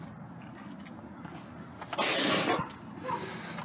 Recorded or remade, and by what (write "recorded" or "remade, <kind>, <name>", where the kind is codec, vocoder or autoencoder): recorded